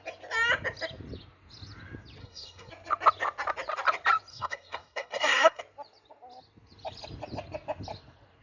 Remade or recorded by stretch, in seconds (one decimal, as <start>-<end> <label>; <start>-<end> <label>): 0.0-2.2 recorded; 2.2-2.7 remade; 2.7-4.3 recorded; 4.3-5.6 remade; 5.6-8.4 recorded